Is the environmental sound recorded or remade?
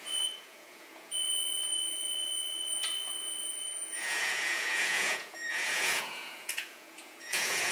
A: remade